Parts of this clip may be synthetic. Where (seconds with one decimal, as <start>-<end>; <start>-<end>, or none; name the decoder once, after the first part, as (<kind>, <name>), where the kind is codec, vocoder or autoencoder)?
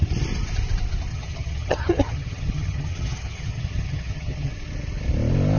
1.1-4.5 (vocoder, HiFi-GAN)